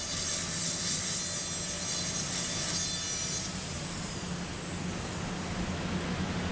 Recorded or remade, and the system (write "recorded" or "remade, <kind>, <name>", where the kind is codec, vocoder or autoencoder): recorded